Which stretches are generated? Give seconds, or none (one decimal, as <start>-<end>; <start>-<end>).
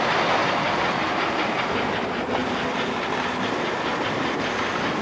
0.4-1.9